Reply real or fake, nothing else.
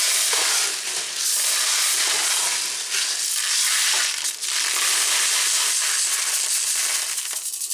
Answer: real